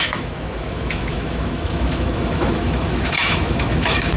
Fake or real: fake